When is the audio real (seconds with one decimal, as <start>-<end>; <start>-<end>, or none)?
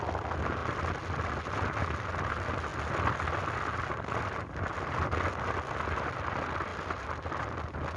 0.0-0.6; 1.3-8.0